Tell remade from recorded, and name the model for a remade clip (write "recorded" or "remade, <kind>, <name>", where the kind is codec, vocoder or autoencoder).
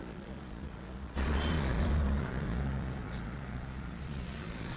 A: remade, vocoder, Vocos